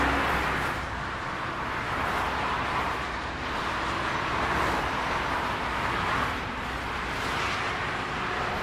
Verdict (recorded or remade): recorded